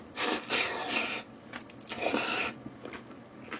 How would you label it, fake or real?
real